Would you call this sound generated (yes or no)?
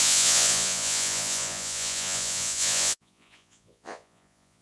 yes